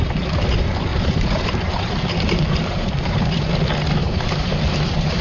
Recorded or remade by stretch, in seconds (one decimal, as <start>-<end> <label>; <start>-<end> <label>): 0.0-0.9 recorded; 0.9-3.5 remade; 3.5-4.0 recorded; 4.0-4.5 remade; 4.5-5.2 recorded